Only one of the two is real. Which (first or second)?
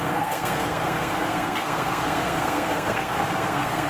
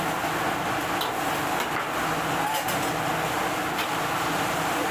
second